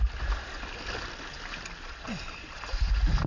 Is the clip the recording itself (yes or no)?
yes